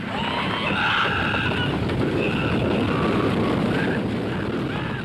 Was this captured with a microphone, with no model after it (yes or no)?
yes